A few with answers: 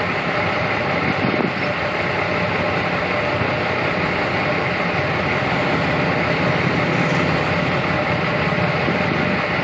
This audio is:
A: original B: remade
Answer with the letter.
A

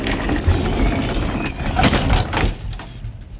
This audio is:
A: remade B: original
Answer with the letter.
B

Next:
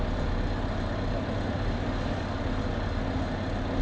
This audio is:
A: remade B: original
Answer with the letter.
B